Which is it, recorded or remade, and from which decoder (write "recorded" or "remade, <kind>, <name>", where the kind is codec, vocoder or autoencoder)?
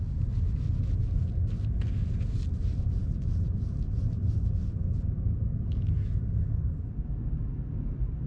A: recorded